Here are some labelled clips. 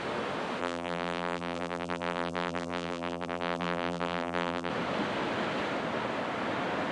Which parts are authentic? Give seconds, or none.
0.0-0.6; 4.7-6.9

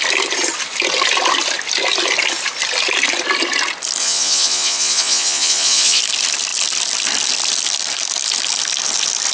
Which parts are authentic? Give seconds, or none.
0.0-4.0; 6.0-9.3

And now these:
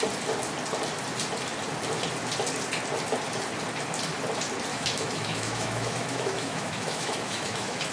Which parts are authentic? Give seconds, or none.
0.0-4.7

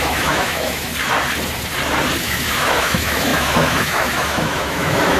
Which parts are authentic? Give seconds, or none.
0.9-2.2

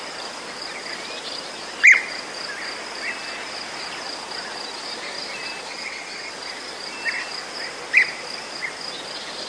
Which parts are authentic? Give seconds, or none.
0.0-5.7; 6.3-9.5

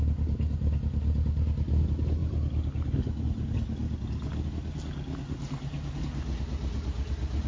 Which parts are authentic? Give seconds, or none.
0.0-7.5

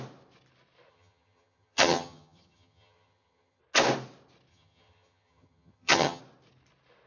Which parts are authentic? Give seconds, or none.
0.0-0.9; 3.6-4.5; 6.2-7.1